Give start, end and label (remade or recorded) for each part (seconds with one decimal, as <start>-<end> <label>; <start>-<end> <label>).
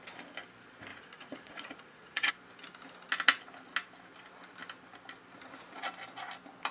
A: 0.0-0.9 recorded; 0.9-2.3 remade; 2.3-6.7 recorded